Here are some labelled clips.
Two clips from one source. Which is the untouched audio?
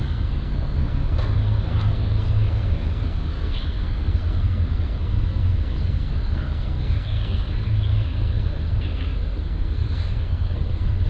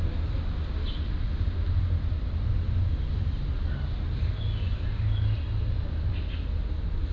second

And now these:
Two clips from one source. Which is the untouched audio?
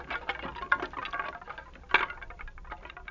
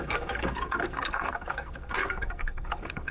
first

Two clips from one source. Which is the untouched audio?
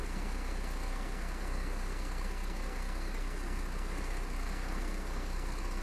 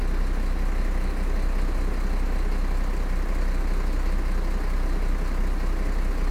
second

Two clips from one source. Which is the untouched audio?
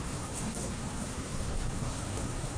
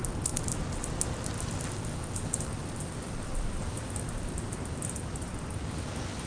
second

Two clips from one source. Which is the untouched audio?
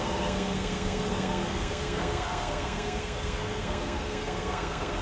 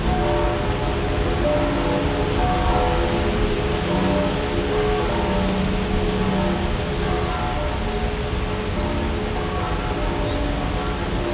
second